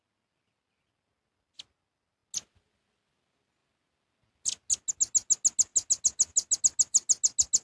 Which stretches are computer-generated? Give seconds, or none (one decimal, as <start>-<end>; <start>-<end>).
none